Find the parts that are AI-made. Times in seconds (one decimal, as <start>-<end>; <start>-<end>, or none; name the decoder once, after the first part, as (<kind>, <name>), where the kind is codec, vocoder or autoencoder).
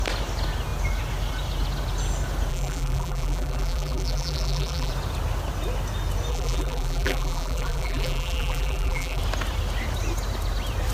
2.5-4.9 (vocoder, BigVGAN v2); 6.3-9.2